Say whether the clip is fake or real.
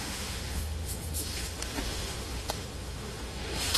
fake